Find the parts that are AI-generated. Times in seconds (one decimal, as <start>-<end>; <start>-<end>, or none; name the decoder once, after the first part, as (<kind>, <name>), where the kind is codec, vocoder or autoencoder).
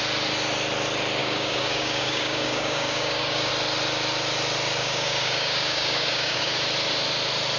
1.2-3.5 (codec, DAC); 4.8-6.6